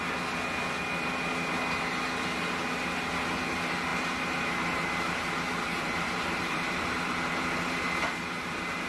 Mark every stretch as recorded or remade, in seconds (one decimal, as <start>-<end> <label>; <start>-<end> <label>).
0.0-3.9 recorded; 3.9-8.9 remade